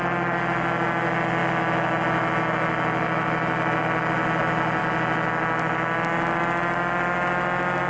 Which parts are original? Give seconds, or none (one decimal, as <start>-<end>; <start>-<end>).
0.0-7.9